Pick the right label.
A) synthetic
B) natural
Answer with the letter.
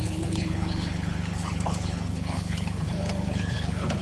A